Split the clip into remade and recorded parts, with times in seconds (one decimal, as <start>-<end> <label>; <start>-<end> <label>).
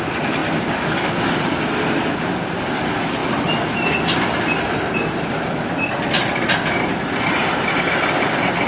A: 0.0-8.7 recorded